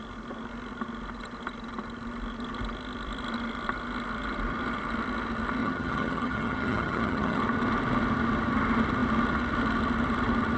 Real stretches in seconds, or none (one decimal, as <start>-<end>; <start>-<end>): 0.0-5.6; 7.4-10.6